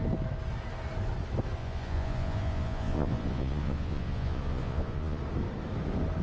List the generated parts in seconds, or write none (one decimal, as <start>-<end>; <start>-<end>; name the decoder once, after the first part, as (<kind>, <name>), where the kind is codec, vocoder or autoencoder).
1.6-5.2 (vocoder, Vocos)